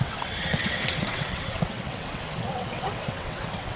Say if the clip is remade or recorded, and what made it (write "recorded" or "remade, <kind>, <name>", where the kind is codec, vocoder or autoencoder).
remade, vocoder, WaveNeXt